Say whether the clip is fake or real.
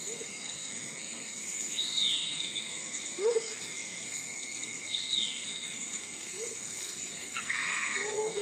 fake